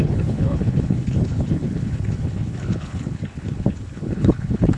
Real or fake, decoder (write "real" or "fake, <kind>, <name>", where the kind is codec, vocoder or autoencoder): fake, codec, HILCodec